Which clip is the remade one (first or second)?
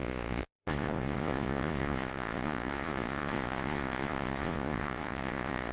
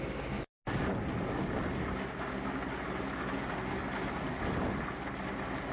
first